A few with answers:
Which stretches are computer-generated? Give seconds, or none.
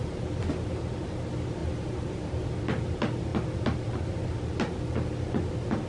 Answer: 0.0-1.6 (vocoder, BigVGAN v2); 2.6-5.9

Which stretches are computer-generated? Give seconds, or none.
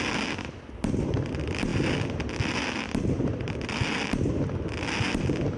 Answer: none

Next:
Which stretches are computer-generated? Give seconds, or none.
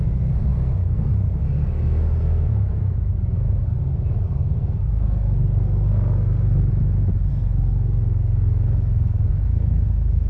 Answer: 0.0-6.7 (codec, SNAC); 7.3-10.3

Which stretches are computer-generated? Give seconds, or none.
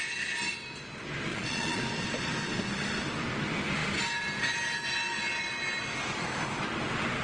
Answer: 1.3-1.8 (vocoder, Vocos)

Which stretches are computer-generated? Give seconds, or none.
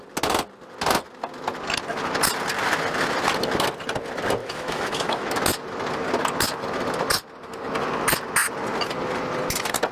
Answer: 4.4-5.4 (autoencoder, DAC-VAE)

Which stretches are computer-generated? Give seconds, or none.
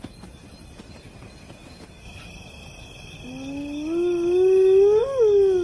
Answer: none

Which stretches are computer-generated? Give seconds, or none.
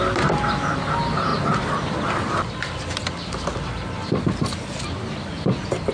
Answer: none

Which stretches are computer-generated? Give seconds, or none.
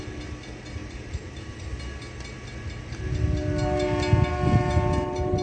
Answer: 0.8-1.8 (vocoder, BigVGAN v2)